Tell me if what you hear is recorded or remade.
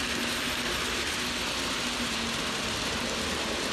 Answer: recorded